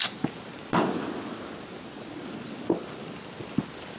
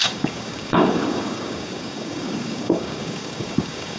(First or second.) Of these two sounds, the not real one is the second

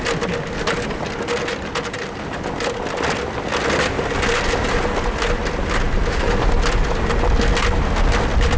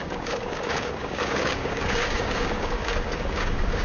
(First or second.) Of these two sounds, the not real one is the second